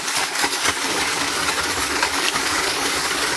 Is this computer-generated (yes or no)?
yes